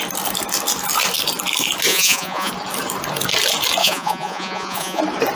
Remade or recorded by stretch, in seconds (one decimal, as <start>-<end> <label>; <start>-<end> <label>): 0.0-1.9 recorded; 1.9-2.5 remade; 2.5-3.8 recorded; 3.8-5.0 remade; 5.0-5.4 recorded